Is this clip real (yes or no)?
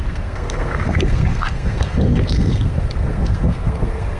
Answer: no